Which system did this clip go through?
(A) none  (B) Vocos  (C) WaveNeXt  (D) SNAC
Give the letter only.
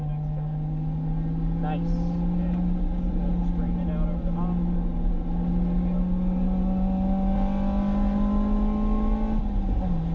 A